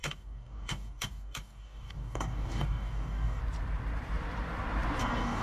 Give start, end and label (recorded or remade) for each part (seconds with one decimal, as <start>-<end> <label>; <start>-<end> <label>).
0.0-3.4 remade; 3.4-5.0 recorded; 5.0-5.4 remade